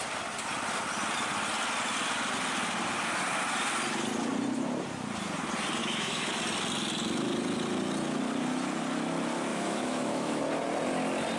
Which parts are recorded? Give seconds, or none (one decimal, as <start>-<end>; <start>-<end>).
0.0-5.8; 6.3-9.5; 10.4-11.4